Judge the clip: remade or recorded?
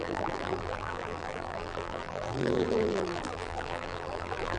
remade